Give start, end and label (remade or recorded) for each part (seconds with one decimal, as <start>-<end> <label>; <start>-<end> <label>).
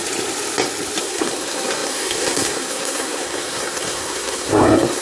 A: 0.0-1.0 recorded; 1.0-5.0 remade